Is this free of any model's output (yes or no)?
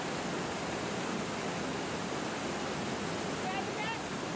yes